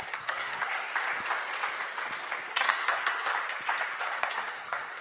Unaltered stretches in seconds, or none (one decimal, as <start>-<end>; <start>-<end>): 0.9-2.5; 3.3-4.0